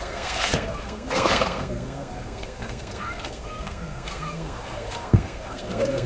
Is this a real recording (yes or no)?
no